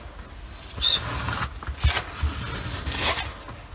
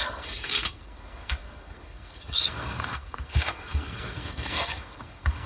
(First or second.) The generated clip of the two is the second